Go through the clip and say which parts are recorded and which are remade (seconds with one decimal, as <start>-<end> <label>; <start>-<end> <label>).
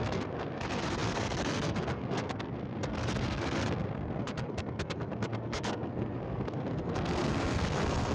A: 0.0-8.1 remade